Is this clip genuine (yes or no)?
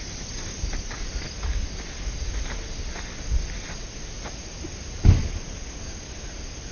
yes